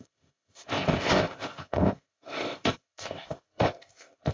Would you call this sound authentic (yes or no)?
no